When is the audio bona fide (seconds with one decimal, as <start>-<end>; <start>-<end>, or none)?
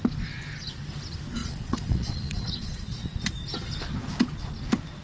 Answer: 0.0-1.4; 3.2-5.0